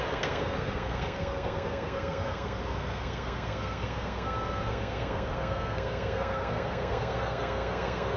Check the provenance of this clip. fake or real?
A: fake